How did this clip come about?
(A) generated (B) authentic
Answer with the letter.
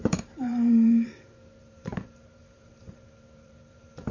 A